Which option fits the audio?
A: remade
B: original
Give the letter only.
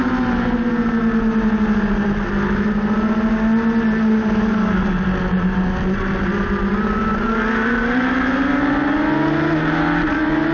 B